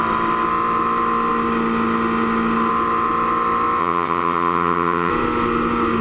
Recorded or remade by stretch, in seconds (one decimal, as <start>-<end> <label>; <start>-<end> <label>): 0.0-3.8 recorded; 3.8-5.1 remade; 5.1-6.0 recorded